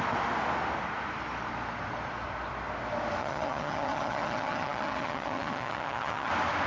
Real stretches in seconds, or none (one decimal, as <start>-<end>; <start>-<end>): 0.0-3.2; 6.3-6.7